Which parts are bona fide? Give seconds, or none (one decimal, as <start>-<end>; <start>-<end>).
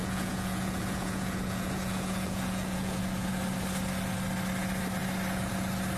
3.0-6.0